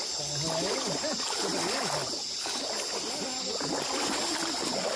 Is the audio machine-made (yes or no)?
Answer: no